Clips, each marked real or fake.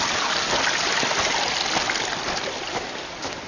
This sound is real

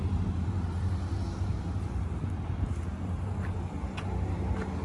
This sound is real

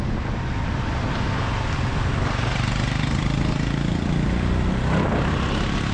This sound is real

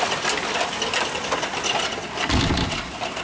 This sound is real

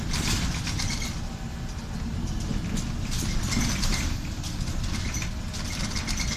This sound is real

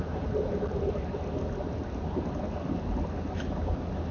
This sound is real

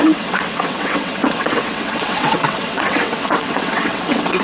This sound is fake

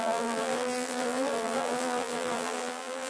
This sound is fake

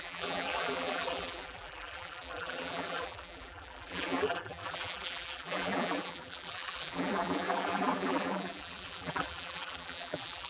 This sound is fake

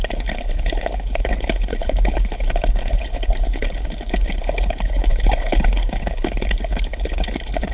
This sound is fake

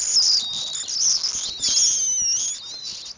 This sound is real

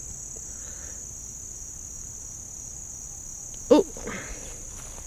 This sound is real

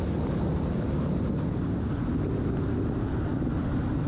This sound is real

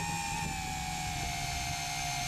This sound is real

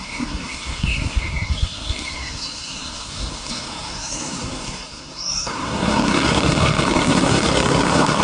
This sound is fake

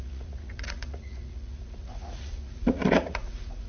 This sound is fake